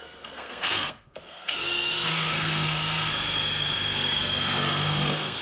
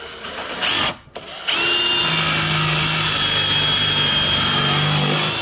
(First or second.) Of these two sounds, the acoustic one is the second